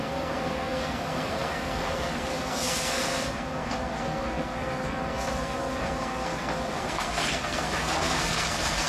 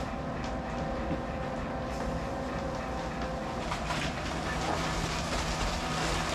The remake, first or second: first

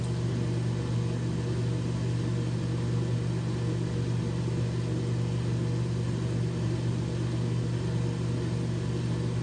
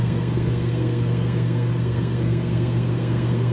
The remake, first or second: second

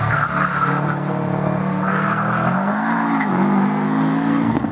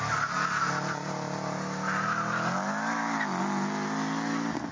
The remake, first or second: first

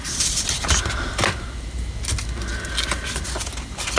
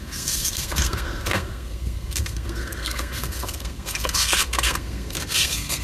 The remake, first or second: second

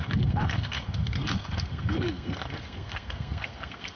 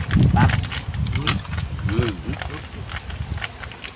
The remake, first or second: first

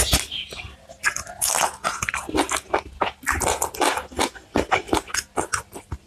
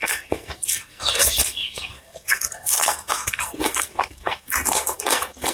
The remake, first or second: second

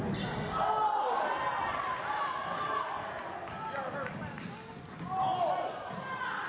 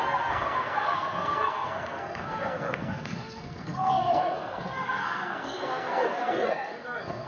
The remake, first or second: second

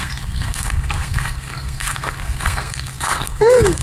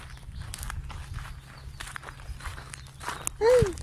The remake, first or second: first